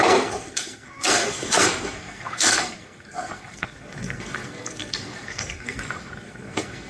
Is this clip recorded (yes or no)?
no